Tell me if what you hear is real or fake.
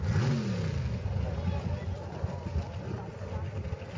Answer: real